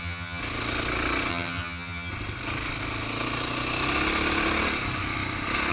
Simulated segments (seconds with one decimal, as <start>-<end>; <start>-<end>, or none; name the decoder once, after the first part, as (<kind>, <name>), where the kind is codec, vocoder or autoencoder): 0.0-0.4 (vocoder, HiFi-GAN); 1.3-2.1